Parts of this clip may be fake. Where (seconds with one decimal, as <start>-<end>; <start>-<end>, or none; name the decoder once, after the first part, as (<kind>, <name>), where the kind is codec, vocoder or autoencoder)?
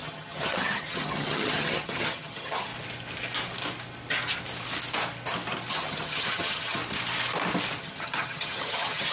0.0-2.7 (vocoder, HiFi-GAN); 5.7-6.8; 7.8-9.1